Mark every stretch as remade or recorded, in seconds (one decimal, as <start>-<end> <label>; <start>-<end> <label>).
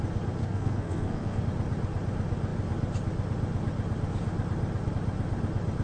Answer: 0.0-0.4 recorded; 0.4-1.4 remade; 1.4-5.8 recorded